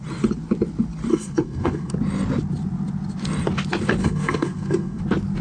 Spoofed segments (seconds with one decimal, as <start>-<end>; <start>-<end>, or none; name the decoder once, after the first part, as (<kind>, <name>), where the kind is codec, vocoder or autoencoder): 1.1-1.9 (codec, SNAC); 4.0-5.0